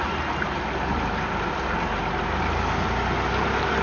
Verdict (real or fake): real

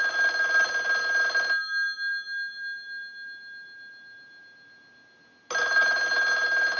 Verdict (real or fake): real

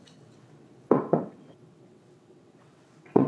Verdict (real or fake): fake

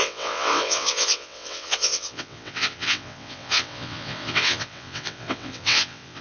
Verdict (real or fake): fake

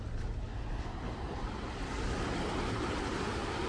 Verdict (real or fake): real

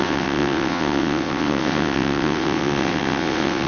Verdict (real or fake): fake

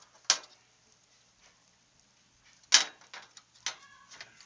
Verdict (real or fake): real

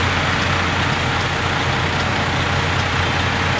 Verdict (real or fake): real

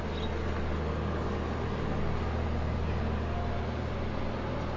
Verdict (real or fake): real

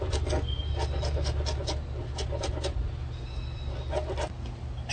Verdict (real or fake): real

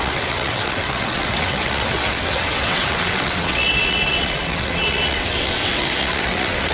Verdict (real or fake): fake